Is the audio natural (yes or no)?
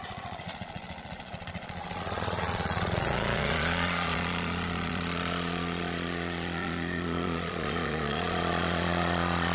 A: no